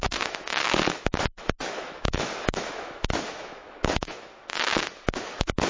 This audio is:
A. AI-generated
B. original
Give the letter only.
A